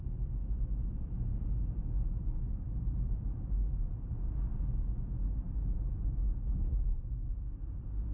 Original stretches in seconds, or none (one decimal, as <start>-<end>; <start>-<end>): 0.4-2.8; 3.8-7.1